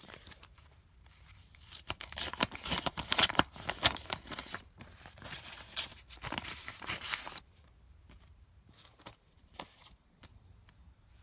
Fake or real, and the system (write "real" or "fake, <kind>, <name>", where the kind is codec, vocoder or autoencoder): fake, vocoder, BigVGAN v2